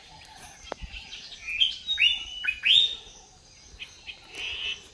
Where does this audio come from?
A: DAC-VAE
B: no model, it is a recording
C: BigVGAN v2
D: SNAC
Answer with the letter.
B